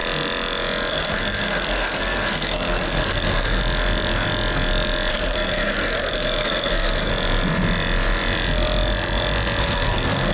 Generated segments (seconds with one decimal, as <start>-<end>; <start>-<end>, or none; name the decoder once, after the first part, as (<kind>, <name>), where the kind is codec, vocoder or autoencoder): 0.9-3.6 (codec, SNAC); 5.1-7.1; 9.6-10.3